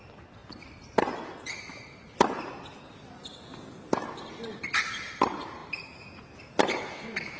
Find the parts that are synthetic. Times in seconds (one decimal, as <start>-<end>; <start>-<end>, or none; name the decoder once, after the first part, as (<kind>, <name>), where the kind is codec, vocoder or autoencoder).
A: none